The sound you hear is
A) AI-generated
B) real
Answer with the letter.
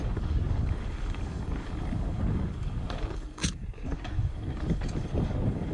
A